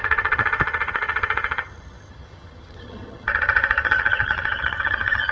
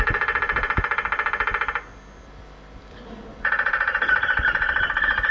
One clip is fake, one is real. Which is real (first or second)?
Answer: second